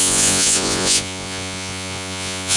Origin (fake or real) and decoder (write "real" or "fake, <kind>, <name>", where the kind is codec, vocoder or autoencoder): fake, vocoder, Vocos